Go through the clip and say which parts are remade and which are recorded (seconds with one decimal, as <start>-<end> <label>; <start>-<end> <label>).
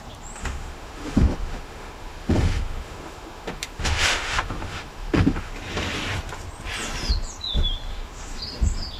0.0-0.4 recorded; 0.4-5.5 remade; 5.5-7.9 recorded; 7.9-8.4 remade; 8.4-9.0 recorded